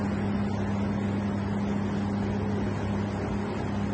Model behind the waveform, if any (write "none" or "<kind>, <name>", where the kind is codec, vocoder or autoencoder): none